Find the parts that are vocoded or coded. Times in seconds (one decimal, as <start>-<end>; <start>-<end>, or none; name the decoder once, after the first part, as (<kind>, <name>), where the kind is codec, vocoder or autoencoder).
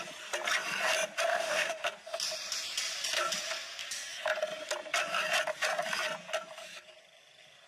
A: 1.3-1.8 (autoencoder, DAC-VAE)